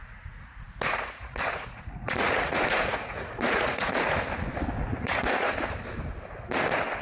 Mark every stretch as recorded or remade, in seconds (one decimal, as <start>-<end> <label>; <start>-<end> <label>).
0.0-4.0 remade; 4.0-4.9 recorded; 4.9-5.5 remade; 5.5-7.0 recorded